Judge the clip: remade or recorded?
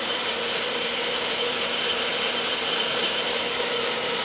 remade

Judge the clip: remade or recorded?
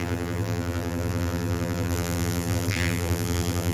remade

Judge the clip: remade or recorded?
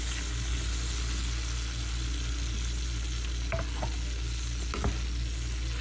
recorded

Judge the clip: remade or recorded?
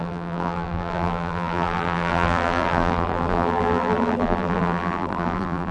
remade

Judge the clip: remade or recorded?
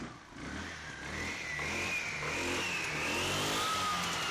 recorded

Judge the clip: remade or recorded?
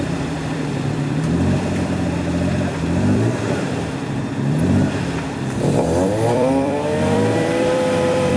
remade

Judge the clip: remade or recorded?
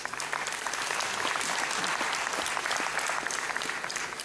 recorded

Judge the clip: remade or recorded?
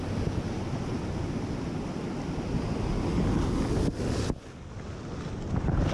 recorded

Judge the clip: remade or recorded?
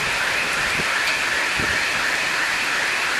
recorded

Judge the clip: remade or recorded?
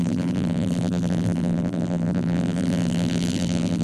remade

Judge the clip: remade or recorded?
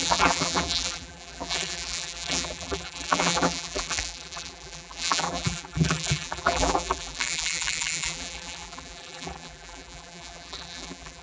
remade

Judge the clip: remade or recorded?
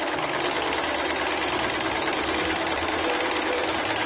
remade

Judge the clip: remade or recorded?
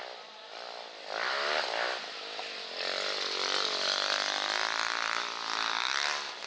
remade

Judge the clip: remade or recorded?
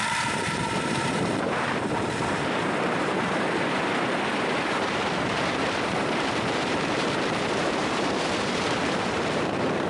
remade